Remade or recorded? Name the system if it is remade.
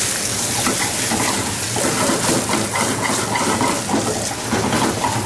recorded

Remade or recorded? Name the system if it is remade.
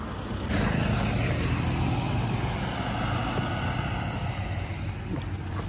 recorded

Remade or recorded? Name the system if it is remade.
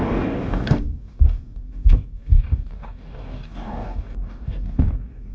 remade, codec, DAC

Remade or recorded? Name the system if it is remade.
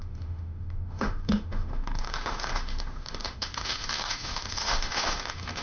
remade, autoencoder, DAC-VAE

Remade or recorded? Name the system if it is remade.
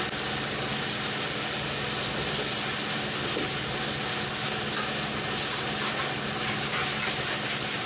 recorded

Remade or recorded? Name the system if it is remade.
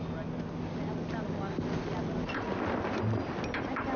recorded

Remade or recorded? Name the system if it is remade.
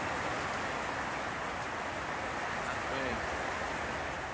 recorded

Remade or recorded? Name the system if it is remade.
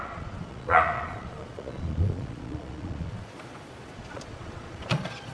remade, vocoder, Vocos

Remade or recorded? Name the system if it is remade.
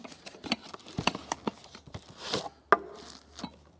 recorded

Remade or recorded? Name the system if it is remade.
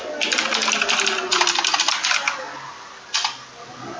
recorded